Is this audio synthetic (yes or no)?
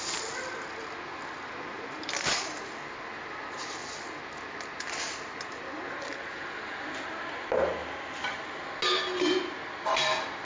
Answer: no